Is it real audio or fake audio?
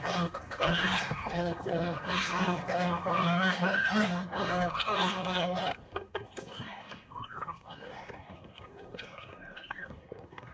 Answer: fake